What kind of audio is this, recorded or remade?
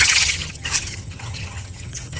remade